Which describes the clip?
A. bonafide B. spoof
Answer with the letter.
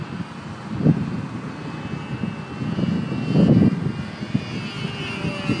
A